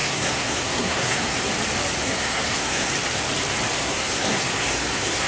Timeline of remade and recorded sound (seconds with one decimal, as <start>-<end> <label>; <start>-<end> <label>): 0.0-1.4 remade; 1.4-2.0 recorded; 2.0-2.9 remade; 2.9-3.8 recorded; 3.8-5.3 remade